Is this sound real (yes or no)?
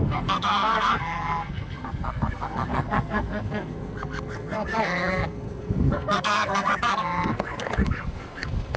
no